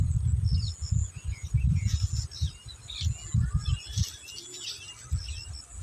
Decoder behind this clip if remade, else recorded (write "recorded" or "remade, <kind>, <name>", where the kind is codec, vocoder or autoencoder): recorded